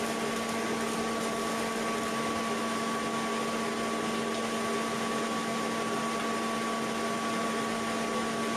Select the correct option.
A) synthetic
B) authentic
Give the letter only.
B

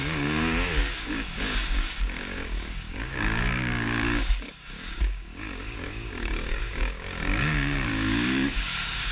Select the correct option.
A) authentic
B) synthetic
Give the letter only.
B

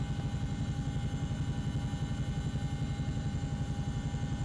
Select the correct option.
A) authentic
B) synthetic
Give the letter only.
A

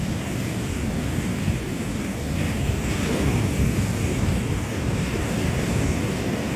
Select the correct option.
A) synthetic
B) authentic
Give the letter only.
A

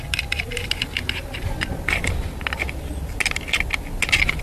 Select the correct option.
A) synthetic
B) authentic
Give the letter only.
B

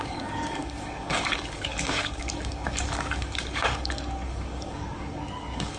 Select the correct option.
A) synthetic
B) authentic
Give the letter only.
A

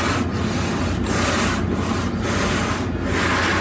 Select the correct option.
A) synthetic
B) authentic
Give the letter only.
B